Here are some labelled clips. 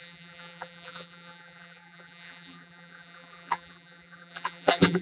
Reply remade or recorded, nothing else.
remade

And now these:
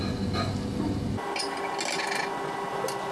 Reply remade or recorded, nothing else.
recorded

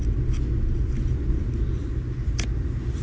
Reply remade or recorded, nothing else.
recorded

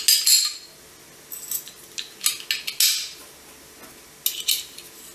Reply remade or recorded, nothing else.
recorded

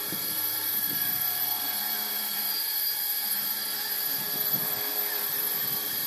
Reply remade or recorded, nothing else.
remade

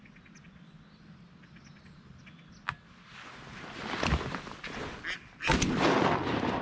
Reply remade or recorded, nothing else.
recorded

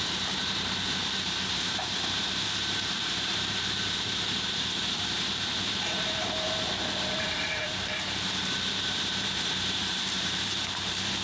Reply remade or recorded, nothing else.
remade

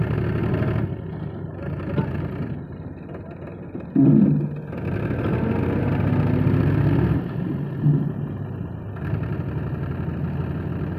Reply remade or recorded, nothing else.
recorded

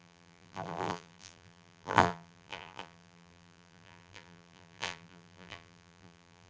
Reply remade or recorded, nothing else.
remade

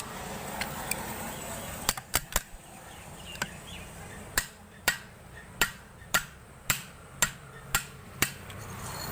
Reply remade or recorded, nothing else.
remade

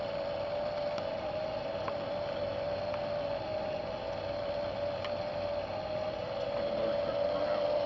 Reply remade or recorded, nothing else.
recorded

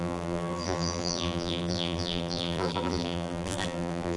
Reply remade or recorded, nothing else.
remade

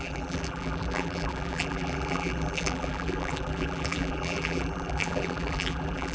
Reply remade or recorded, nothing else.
remade